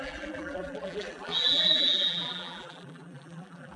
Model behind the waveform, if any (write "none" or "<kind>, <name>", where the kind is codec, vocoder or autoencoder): vocoder, BigVGAN v2